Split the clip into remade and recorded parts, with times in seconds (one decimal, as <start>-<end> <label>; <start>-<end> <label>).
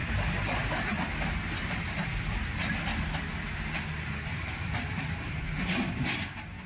0.0-0.6 remade; 0.6-1.6 recorded; 1.6-5.6 remade; 5.6-6.7 recorded